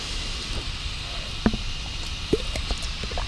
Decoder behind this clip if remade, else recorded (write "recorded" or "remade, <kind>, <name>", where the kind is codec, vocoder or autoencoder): recorded